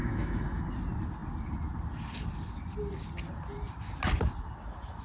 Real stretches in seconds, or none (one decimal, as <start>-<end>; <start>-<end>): 0.6-5.0